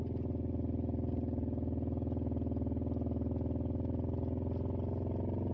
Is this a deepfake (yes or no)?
no